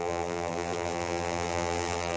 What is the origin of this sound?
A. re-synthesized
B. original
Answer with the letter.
A